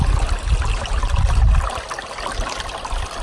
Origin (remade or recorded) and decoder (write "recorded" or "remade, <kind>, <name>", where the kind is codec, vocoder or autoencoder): recorded